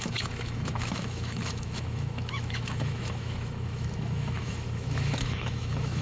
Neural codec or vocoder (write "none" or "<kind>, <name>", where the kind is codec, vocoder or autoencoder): autoencoder, DAC-VAE